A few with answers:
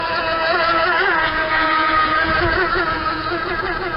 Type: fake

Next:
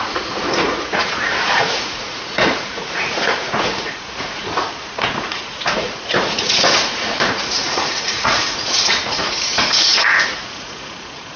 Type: fake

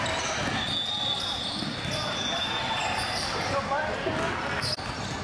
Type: real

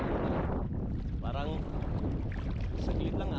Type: real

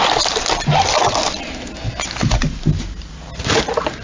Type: real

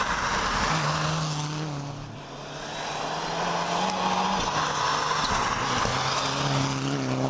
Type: real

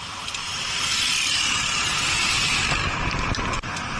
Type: real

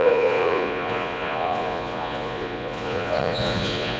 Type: fake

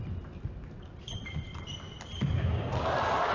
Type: real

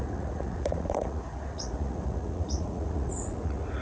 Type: fake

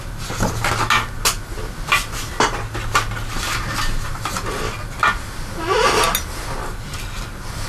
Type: real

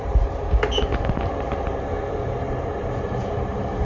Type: fake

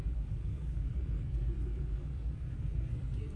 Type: fake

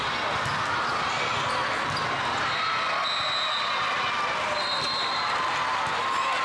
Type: real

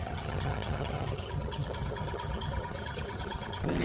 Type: fake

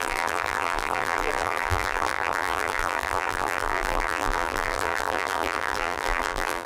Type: fake